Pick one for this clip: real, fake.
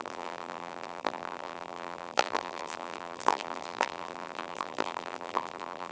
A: fake